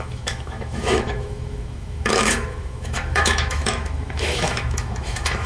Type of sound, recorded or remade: remade